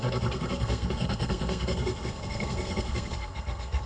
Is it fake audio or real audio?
fake